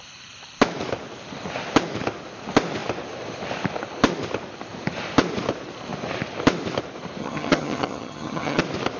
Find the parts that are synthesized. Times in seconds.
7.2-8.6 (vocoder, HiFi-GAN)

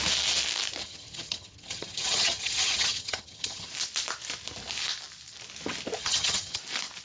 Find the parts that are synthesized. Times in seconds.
0.8-3.7 (vocoder, HiFi-GAN); 6.0-6.6

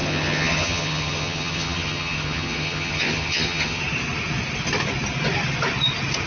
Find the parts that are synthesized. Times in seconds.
0.0-3.8 (vocoder, HiFi-GAN)

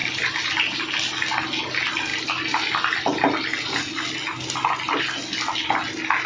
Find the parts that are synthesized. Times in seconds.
none